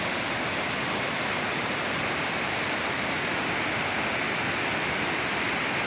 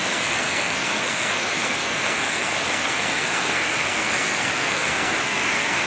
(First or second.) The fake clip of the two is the second